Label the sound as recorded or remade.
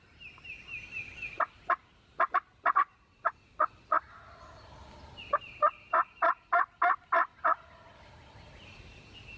recorded